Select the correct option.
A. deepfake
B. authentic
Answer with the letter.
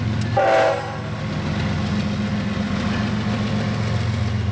B